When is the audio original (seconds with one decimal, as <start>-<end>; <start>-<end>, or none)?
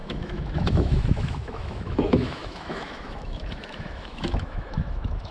none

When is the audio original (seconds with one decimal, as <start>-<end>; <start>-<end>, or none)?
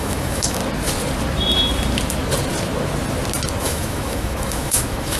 0.6-3.6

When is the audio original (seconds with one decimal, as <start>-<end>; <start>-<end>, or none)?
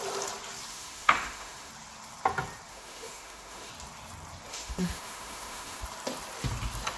0.0-0.7; 1.7-2.7; 3.7-4.5; 5.8-7.0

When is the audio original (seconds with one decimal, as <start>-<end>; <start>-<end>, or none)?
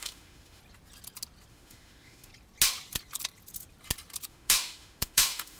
0.6-1.5; 2.3-4.3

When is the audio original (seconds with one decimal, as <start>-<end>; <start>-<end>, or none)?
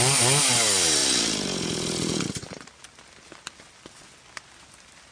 0.0-5.1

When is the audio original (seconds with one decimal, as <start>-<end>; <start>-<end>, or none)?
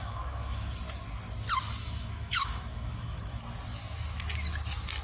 0.8-1.8; 3.4-5.0